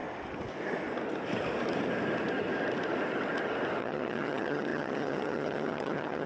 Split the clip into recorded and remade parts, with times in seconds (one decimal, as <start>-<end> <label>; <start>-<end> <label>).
0.0-3.8 recorded; 3.8-6.3 remade